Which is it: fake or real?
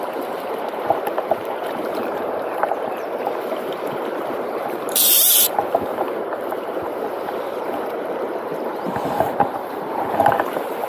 fake